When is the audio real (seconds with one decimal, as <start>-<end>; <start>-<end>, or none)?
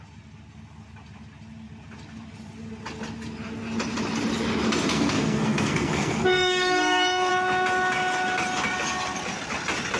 0.0-4.9; 7.3-10.0